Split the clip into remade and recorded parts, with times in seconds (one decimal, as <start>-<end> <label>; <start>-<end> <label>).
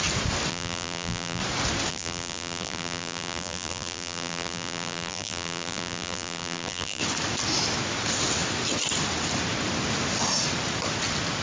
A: 0.0-0.5 recorded; 0.5-1.4 remade; 1.4-1.9 recorded; 1.9-7.0 remade; 7.0-11.4 recorded